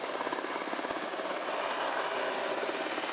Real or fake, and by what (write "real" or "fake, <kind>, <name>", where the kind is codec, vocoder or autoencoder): real